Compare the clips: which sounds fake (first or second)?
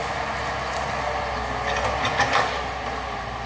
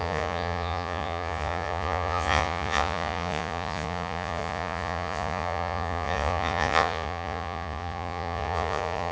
second